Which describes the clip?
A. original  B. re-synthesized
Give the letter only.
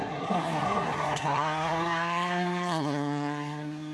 B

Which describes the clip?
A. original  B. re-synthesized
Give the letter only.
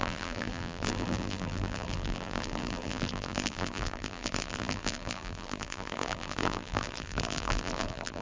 B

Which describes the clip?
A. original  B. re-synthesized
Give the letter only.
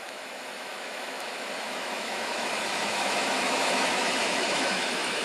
B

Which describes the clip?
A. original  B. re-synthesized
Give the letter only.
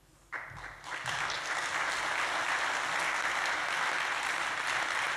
A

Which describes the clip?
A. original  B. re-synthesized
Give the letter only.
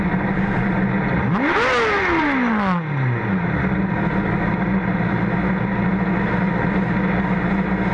A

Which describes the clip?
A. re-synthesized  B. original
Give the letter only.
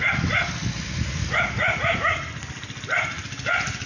B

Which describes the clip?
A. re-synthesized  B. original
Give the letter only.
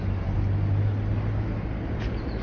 B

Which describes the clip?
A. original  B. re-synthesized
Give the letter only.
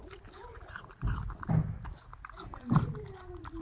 A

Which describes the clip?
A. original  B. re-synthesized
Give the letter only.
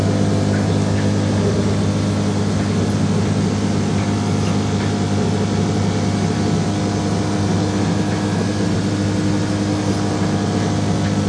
A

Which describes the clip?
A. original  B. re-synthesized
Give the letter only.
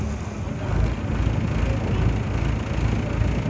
A